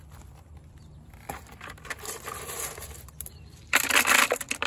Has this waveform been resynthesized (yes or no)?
yes